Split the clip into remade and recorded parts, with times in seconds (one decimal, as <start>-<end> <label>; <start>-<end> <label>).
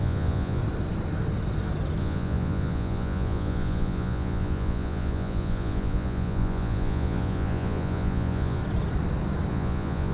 0.0-0.6 remade; 0.6-2.0 recorded; 2.0-8.6 remade; 8.6-9.5 recorded; 9.5-10.1 remade